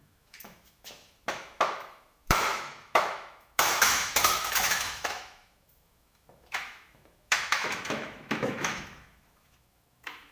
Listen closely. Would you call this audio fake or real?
fake